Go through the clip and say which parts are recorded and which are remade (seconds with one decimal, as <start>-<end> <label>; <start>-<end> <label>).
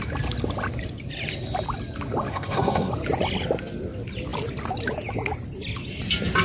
0.0-2.3 recorded; 2.3-2.9 remade; 2.9-6.4 recorded